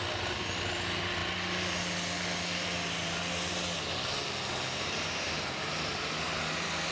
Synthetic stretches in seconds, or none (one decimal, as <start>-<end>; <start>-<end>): none